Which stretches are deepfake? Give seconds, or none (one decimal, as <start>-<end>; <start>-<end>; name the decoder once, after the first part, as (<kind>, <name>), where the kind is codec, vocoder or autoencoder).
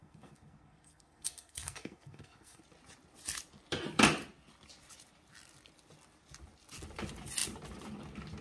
0.0-2.6 (codec, SNAC)